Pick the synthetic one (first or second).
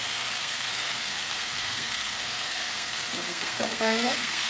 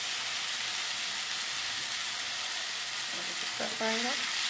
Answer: first